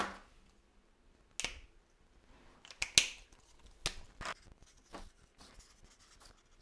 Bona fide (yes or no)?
yes